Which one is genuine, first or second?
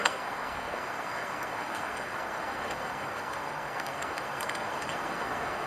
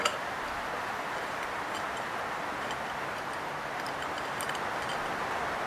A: second